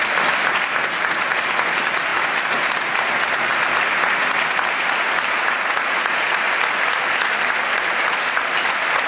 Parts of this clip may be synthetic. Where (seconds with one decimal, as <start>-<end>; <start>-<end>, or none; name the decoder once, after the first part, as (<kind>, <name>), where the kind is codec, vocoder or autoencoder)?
none